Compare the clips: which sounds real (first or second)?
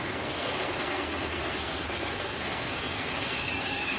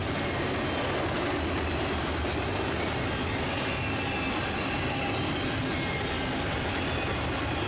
second